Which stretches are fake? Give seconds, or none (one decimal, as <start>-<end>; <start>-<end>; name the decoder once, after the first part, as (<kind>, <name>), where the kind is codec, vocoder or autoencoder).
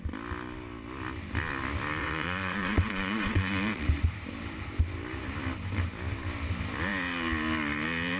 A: 2.0-4.0 (vocoder, WaveNeXt)